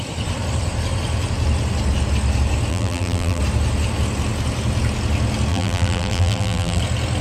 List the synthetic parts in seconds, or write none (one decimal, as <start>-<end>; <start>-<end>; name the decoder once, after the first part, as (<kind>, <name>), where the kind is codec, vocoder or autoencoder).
2.7-3.4 (vocoder, BigVGAN v2); 5.5-6.8